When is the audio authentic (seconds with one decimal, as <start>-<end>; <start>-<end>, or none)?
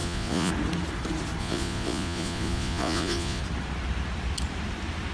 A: 0.5-1.4; 3.4-5.1